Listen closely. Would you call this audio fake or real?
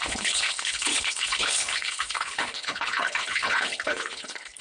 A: fake